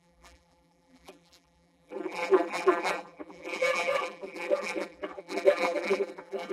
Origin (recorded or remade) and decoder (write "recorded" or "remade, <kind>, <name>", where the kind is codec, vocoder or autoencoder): remade, vocoder, BigVGAN v2